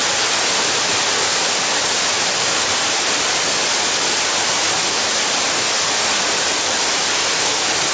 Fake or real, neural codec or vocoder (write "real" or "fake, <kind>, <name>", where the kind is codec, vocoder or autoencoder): real